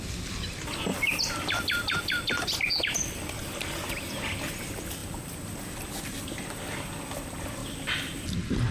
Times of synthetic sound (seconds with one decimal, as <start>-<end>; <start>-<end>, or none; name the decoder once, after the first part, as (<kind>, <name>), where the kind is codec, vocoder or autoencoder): none